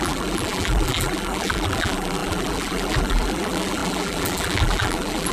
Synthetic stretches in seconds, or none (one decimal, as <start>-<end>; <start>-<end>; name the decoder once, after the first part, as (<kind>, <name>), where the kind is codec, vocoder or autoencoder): 0.0-5.3 (vocoder, BigVGAN v2)